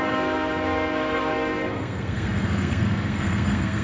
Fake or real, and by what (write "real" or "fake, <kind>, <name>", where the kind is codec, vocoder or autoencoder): fake, codec, SNAC